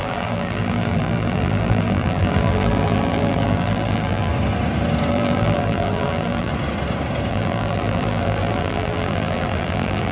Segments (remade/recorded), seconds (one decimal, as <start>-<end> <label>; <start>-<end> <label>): 0.0-4.3 remade; 4.3-5.1 recorded; 5.1-6.5 remade; 6.5-7.3 recorded; 7.3-10.1 remade